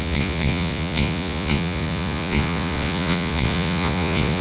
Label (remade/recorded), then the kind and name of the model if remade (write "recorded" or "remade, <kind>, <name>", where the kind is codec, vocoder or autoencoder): remade, vocoder, Vocos